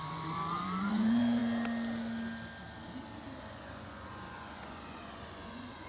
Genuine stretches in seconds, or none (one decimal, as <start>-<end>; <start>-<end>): 1.4-3.4